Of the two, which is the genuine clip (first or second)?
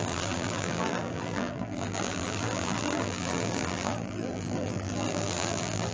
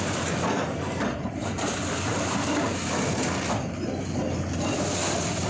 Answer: second